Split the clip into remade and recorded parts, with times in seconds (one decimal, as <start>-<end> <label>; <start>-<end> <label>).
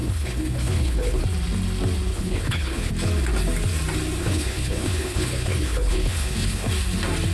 0.0-1.2 remade; 1.2-2.1 recorded; 2.1-2.9 remade; 2.9-4.2 recorded; 4.2-6.7 remade; 6.7-7.3 recorded